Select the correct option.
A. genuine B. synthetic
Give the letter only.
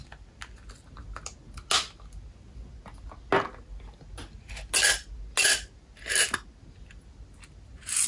A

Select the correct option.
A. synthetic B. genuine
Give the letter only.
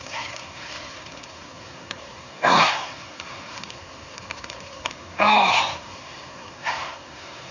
A